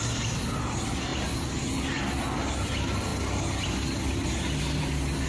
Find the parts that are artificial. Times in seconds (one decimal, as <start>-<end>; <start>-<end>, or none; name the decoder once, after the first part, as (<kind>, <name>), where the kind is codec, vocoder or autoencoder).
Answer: none